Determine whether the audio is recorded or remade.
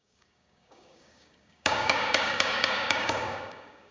remade